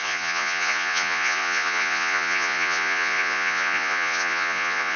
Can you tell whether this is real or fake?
fake